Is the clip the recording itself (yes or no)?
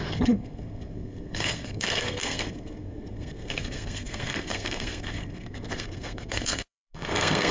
no